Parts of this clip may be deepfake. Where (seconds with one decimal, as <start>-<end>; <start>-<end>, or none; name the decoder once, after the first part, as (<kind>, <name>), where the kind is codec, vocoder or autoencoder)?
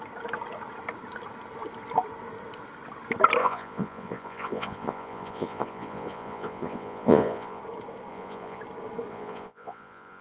3.4-7.6 (vocoder, Vocos); 8.1-8.6; 9.1-10.2